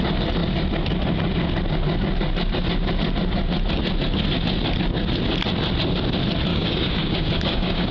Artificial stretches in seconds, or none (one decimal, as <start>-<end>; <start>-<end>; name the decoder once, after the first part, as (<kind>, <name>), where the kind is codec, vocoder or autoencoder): 6.5-7.9 (codec, DAC)

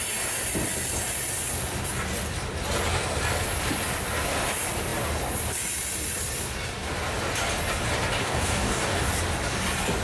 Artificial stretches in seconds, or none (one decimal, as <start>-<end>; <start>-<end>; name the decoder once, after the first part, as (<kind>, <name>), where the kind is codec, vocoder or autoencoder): 8.2-9.1 (codec, DAC)

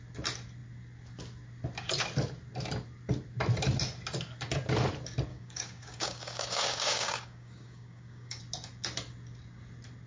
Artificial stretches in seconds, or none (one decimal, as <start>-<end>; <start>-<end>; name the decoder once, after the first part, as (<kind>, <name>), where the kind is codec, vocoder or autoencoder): 5.3-8.4 (codec, DAC)

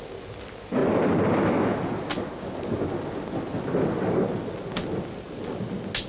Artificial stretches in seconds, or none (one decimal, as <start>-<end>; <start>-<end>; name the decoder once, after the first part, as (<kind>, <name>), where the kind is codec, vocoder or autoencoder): none